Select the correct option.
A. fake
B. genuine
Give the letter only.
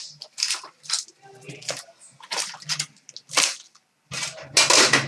B